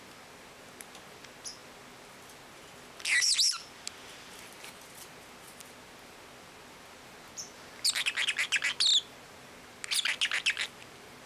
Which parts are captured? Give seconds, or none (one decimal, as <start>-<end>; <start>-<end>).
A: 0.0-11.3